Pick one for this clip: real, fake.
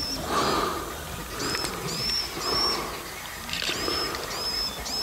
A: real